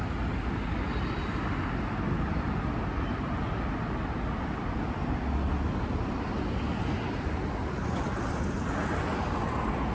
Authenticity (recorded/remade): recorded